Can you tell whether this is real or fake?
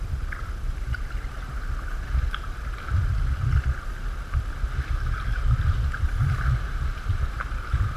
real